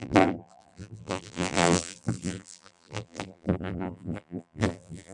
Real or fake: fake